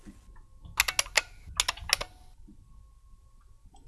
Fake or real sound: real